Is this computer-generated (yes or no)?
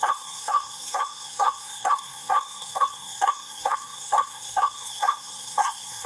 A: yes